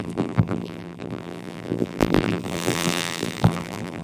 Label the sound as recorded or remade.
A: remade